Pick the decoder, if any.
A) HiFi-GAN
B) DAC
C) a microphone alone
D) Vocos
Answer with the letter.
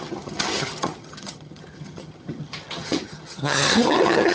A